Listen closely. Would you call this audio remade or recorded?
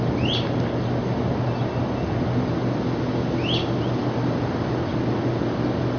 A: recorded